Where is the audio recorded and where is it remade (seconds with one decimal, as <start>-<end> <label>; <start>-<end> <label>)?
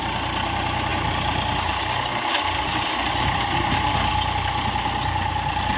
0.0-0.9 recorded; 0.9-3.1 remade; 3.1-5.8 recorded